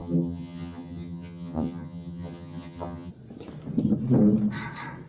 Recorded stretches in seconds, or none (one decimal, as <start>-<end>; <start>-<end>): 3.1-5.1